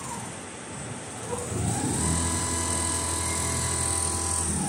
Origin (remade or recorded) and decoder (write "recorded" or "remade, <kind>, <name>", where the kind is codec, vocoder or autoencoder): recorded